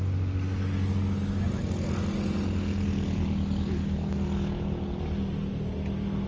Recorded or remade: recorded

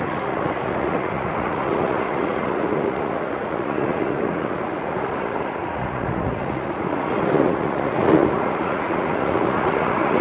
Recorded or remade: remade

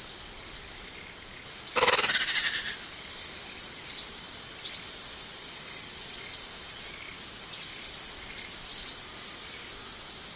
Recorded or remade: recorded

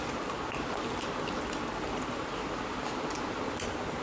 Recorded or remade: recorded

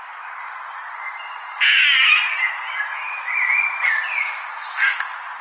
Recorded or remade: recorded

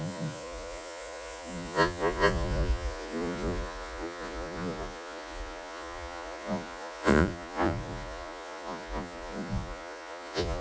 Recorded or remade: remade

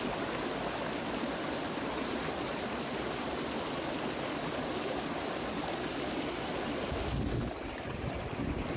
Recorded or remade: recorded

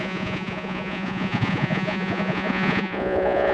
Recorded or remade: remade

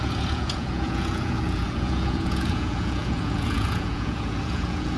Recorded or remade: remade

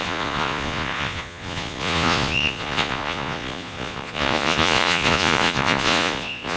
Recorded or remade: remade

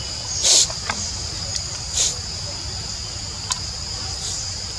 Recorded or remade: recorded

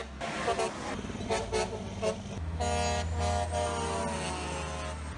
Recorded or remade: recorded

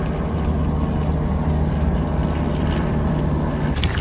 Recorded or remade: recorded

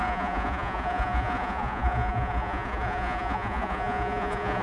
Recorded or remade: remade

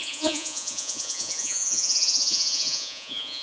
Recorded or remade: remade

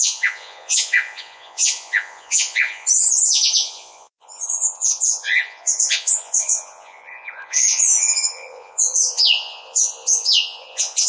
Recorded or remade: remade